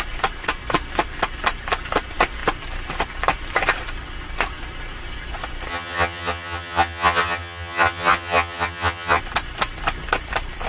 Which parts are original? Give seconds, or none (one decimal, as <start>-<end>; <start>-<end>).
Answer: 0.0-5.7; 9.2-10.7